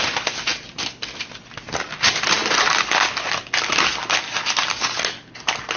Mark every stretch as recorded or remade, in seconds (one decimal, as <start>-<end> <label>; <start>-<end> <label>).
0.0-5.8 recorded